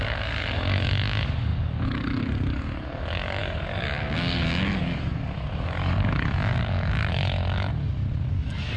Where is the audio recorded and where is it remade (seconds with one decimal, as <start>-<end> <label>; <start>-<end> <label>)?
0.0-7.7 remade; 7.7-8.3 recorded; 8.3-8.8 remade